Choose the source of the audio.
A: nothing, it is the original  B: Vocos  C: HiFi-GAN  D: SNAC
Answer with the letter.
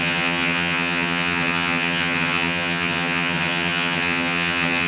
C